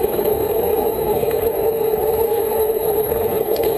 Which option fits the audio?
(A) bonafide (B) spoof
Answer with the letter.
B